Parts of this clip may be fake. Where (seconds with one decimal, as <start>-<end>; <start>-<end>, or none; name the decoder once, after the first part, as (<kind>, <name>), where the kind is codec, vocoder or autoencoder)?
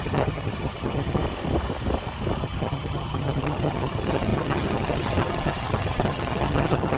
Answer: 0.0-1.2 (vocoder, HiFi-GAN); 2.4-7.0